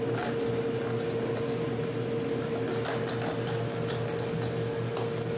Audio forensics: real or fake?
real